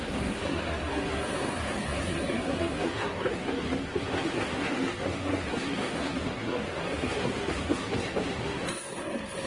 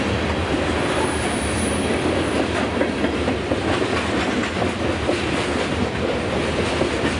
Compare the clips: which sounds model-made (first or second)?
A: first